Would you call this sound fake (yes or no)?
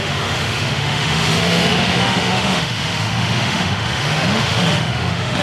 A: yes